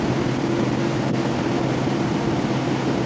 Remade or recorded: recorded